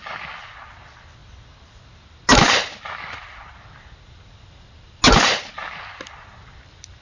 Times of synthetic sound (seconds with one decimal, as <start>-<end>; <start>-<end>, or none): none

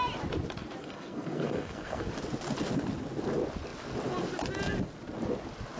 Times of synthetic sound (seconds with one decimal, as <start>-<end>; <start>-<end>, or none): 0.8-2.1

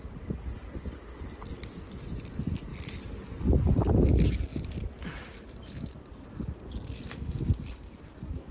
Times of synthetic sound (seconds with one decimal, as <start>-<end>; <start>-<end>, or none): none

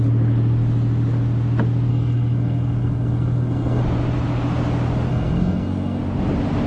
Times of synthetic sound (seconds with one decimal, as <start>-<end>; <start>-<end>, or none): 1.9-3.8; 5.1-6.0